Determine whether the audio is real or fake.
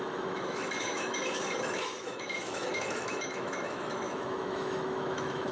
fake